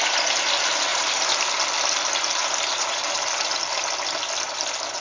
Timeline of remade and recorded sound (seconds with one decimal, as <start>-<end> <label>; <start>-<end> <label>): 0.0-0.9 recorded; 0.9-1.5 remade; 1.5-2.4 recorded; 2.4-3.5 remade; 3.5-5.0 recorded